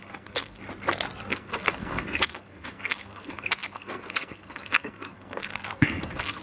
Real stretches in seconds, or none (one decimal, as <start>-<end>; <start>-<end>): 0.6-1.3